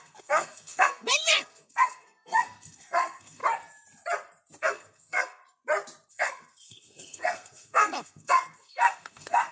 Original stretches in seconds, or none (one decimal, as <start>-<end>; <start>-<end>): 3.4-4.6; 5.4-6.1